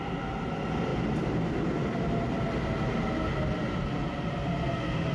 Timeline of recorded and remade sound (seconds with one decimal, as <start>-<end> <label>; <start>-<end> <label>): 0.0-5.1 recorded